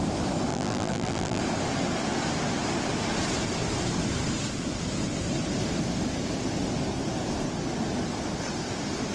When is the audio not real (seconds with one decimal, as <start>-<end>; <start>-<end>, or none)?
0.5-1.4